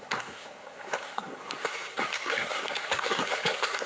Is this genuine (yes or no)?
no